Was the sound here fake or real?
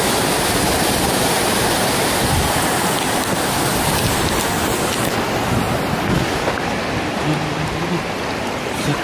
real